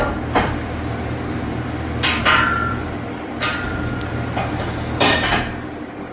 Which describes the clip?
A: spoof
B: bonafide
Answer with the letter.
A